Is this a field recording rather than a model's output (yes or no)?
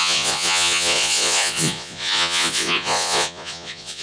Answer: no